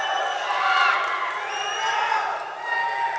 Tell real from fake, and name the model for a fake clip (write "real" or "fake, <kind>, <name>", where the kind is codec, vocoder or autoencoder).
real